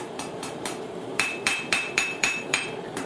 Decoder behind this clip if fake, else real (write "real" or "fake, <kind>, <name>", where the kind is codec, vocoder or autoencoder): fake, vocoder, BigVGAN v2